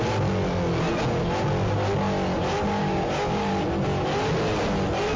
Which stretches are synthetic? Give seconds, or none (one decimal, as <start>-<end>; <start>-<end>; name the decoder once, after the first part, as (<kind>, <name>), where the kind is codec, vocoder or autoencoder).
2.8-3.5 (codec, DAC)